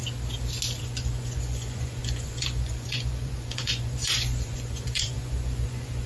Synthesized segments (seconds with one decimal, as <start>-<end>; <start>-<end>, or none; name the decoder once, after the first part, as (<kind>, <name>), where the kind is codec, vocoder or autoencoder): 0.8-6.1 (vocoder, Vocos)